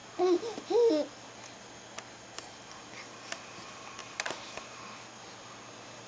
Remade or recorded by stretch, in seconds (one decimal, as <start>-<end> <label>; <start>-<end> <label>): 0.0-6.1 recorded